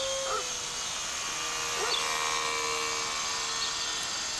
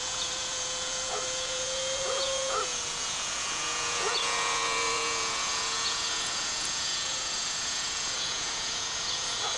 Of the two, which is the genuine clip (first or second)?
first